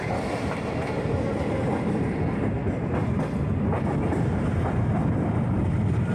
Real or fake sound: real